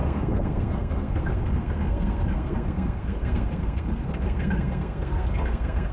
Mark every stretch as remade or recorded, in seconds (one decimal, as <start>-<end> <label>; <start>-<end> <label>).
0.0-5.9 remade